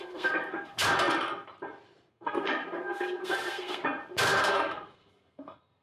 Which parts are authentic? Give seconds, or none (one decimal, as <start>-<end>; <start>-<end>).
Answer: 0.8-2.1; 3.8-4.4